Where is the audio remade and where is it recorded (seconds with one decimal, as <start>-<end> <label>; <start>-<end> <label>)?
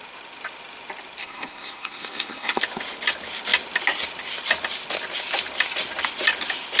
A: 0.0-1.2 recorded; 1.2-2.6 remade; 2.6-6.8 recorded